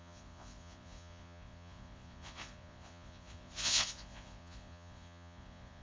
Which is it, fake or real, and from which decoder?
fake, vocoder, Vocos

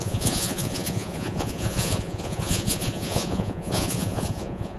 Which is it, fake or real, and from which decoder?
fake, vocoder, Vocos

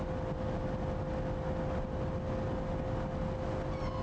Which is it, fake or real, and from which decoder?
real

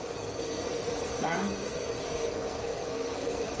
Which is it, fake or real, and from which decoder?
fake, codec, SNAC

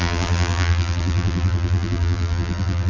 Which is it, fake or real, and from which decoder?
fake, vocoder, BigVGAN v2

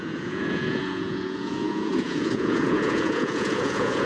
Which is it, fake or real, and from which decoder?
fake, vocoder, Vocos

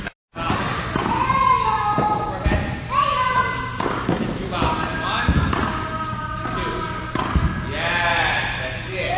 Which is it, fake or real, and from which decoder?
real